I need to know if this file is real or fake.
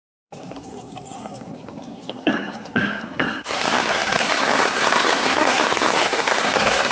fake